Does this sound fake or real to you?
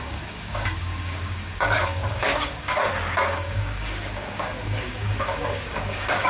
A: fake